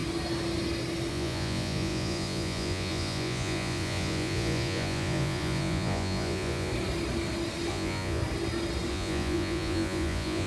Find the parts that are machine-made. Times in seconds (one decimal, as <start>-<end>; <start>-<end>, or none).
1.1-6.7; 7.7-8.2; 8.9-10.5